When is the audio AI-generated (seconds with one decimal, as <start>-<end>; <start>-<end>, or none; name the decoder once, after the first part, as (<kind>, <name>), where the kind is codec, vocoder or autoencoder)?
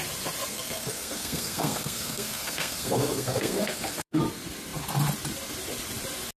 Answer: 0.5-4.2 (codec, SNAC)